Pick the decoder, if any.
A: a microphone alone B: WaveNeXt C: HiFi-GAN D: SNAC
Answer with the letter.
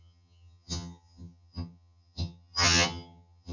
C